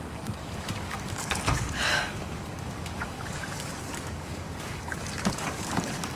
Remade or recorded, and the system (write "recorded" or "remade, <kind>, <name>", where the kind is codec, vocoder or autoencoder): remade, codec, DAC